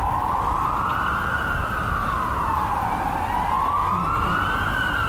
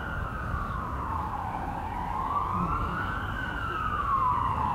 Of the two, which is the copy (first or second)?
second